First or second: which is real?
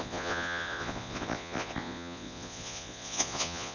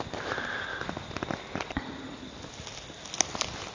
second